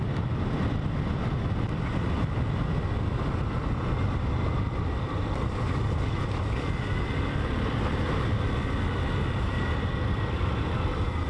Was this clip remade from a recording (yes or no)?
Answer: no